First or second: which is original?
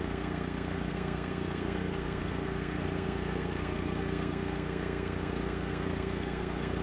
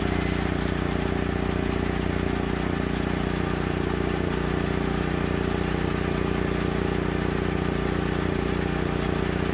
second